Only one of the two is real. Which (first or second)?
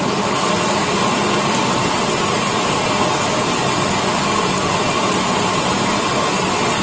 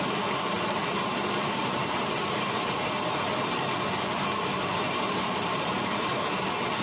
first